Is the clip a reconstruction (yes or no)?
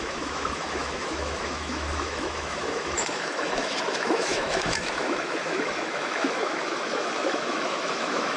yes